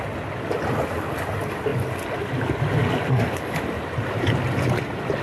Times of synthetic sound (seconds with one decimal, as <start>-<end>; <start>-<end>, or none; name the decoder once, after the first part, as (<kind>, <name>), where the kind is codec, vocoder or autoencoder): none